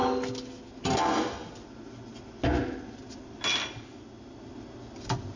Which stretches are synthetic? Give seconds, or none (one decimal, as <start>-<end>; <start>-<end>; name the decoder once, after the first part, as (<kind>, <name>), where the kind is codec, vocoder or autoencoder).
none